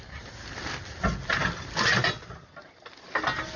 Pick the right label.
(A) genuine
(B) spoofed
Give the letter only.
A